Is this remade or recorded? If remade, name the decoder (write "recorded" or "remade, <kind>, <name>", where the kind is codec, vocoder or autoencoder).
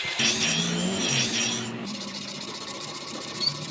remade, vocoder, BigVGAN v2